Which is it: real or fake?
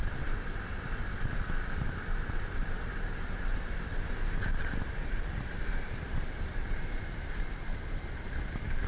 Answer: fake